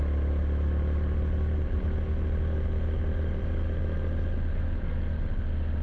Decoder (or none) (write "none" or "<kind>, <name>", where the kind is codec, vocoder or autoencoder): none